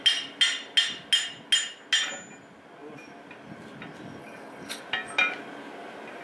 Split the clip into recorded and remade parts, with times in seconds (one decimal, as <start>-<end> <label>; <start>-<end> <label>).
0.0-4.2 recorded; 4.2-4.8 remade; 4.8-6.2 recorded